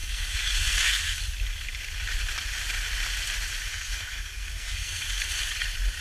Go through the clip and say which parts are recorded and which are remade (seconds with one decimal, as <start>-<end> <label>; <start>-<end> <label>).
0.0-1.2 remade; 1.2-3.7 recorded; 3.7-5.0 remade; 5.0-6.0 recorded